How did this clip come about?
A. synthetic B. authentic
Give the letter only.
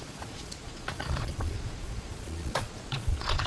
A